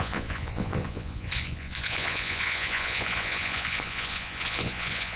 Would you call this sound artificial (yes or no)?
yes